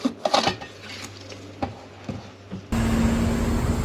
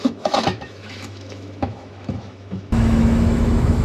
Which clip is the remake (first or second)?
second